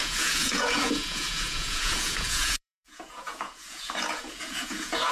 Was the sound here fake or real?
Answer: fake